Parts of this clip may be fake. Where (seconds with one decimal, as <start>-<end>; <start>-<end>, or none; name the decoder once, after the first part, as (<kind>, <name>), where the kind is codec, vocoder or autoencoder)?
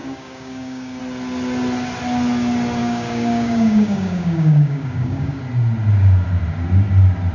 0.0-1.0 (codec, DAC); 2.8-5.4